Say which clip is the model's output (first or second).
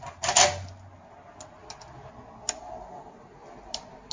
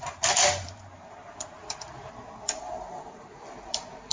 second